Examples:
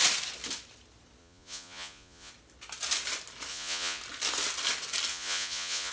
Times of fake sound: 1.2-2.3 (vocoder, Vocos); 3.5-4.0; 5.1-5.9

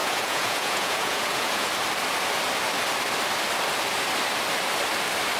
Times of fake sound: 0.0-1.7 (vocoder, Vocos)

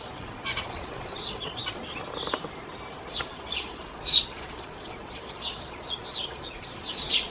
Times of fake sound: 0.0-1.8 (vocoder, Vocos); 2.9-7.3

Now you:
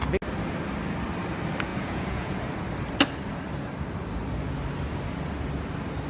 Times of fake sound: 1.7-2.4 (vocoder, Vocos)